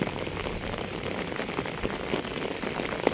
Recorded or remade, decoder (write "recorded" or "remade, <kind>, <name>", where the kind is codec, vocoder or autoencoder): recorded